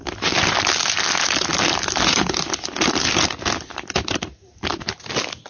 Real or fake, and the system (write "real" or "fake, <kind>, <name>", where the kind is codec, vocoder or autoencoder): real